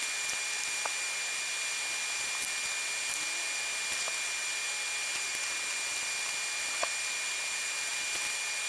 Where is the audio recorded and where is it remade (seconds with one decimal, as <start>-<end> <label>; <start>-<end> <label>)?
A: 0.0-8.7 recorded